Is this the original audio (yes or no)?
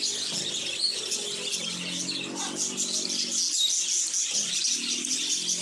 yes